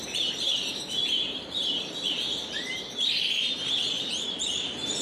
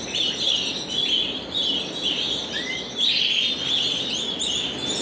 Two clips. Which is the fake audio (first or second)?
first